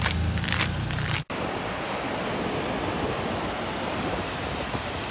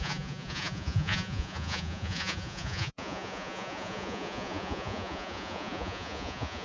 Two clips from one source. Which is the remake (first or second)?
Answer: second